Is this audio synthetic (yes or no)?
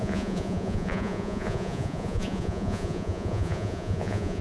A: yes